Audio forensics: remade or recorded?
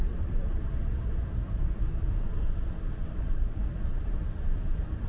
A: remade